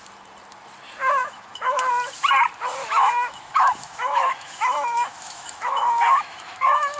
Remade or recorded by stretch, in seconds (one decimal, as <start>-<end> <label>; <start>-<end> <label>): 0.0-1.2 recorded; 1.2-1.9 remade; 1.9-2.8 recorded; 2.8-7.0 remade